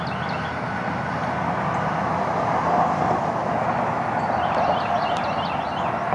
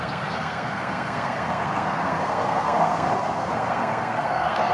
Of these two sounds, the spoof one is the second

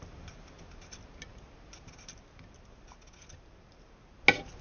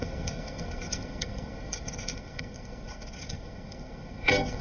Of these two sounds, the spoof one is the second